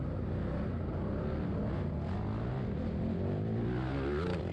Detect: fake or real real